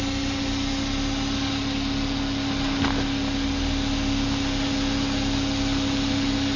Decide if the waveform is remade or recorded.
recorded